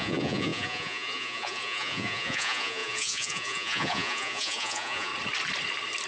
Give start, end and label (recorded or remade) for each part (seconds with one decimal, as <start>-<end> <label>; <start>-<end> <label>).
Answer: 0.0-5.1 remade; 5.1-6.1 recorded

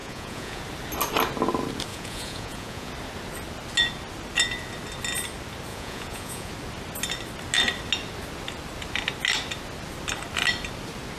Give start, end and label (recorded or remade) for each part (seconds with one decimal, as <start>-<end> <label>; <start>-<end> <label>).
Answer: 0.0-0.6 remade; 0.6-1.9 recorded; 1.9-2.9 remade; 2.9-5.7 recorded; 5.7-6.5 remade; 6.5-11.2 recorded